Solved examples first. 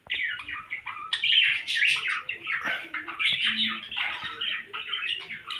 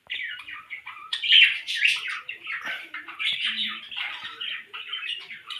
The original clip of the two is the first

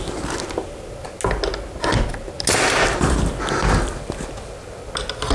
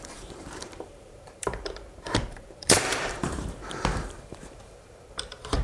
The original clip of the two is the first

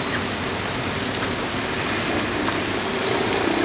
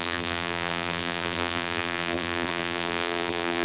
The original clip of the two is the first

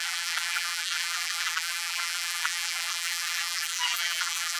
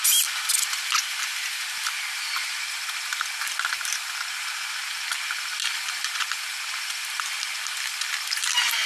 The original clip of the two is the second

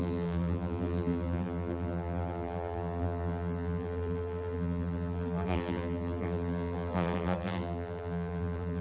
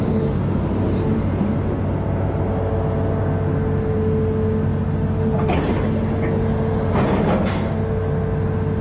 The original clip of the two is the second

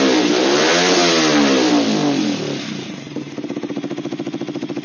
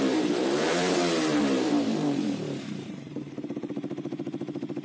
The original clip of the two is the first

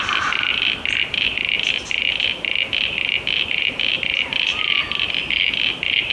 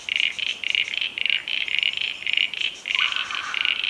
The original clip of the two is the first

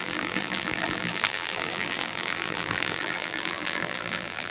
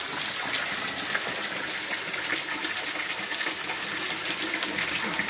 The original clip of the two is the second